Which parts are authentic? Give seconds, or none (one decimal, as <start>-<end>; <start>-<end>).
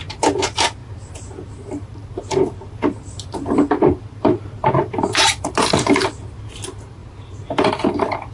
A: none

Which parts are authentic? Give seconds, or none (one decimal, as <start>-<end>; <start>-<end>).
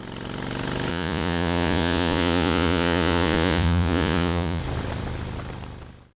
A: 0.0-0.9; 4.6-6.2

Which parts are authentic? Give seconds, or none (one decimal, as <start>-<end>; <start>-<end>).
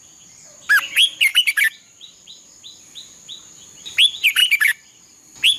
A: 0.0-1.3; 2.4-4.4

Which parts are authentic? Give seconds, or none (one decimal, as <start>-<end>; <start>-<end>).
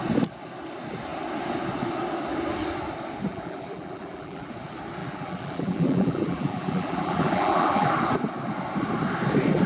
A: 0.0-3.3; 4.5-5.0; 7.9-9.7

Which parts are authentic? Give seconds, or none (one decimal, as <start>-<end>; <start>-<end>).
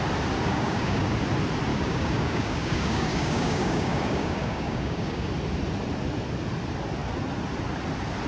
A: 0.0-0.5; 1.1-1.7; 5.3-8.3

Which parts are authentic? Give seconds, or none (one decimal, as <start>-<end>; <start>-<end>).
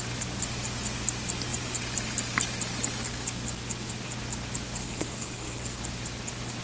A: 0.0-4.8; 5.8-6.6